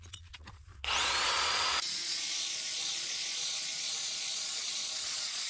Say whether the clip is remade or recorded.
remade